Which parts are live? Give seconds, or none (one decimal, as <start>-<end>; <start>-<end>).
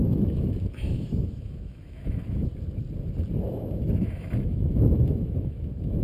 2.5-3.5